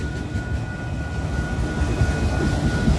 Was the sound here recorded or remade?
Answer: recorded